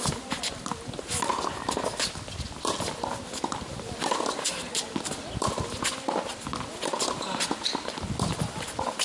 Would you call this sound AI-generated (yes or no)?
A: no